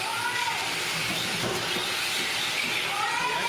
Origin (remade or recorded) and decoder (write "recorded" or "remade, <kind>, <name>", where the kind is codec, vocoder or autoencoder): recorded